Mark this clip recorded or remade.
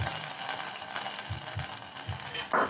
recorded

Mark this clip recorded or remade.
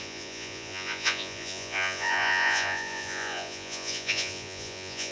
remade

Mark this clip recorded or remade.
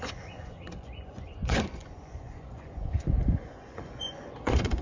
remade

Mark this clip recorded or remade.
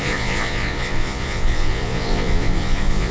remade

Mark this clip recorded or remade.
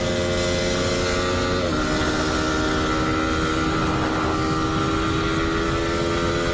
recorded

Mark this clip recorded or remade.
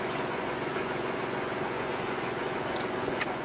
remade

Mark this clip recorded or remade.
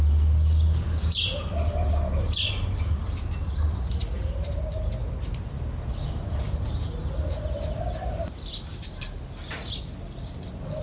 recorded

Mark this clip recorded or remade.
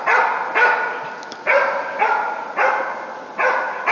recorded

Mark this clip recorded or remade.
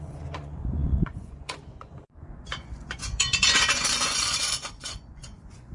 remade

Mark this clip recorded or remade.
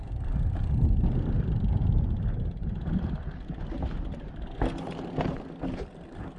recorded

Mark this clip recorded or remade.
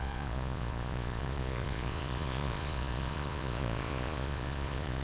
remade